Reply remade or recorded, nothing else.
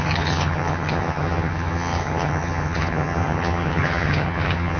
remade